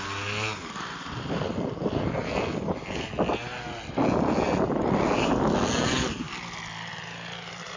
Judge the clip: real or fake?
real